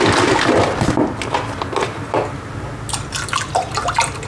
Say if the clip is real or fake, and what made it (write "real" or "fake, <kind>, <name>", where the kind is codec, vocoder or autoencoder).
real